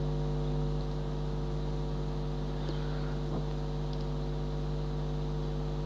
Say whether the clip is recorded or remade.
recorded